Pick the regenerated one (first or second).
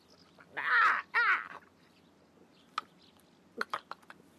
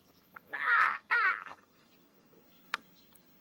second